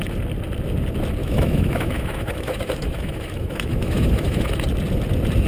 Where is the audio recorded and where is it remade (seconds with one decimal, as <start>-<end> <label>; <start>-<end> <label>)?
0.0-1.2 recorded; 1.2-4.5 remade; 4.5-5.5 recorded